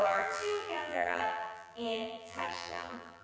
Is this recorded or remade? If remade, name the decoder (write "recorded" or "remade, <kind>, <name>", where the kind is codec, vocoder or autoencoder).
remade, vocoder, BigVGAN v2